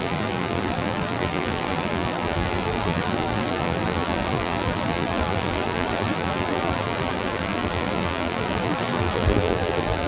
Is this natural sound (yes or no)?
no